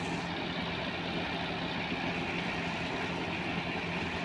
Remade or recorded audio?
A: recorded